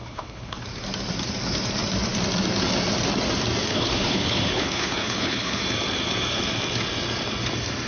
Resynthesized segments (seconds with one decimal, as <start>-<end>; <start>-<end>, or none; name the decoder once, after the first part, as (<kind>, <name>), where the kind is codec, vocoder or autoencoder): 0.0-0.6 (codec, HILCodec); 3.7-5.6